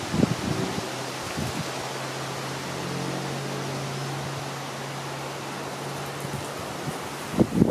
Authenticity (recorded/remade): recorded